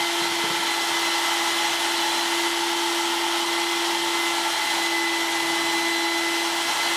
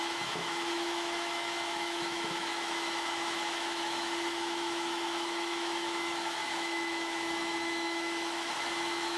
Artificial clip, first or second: second